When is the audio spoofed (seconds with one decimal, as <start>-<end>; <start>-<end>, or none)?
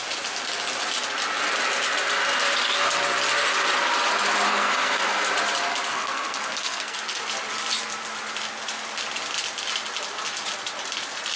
4.5-5.3; 5.9-7.2